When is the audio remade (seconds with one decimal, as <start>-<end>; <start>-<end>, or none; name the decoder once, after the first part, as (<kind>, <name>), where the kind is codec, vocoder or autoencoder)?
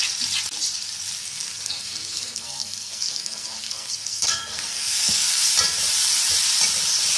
1.2-5.5 (codec, SNAC)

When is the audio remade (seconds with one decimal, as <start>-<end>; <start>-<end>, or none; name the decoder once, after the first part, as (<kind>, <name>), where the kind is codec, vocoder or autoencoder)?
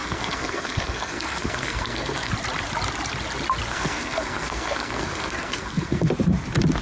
0.0-2.3 (codec, SNAC); 3.7-6.1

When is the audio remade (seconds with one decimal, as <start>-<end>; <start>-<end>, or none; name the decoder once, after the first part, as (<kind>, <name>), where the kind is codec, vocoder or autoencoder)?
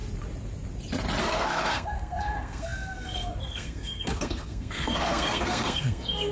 1.2-6.3 (codec, SNAC)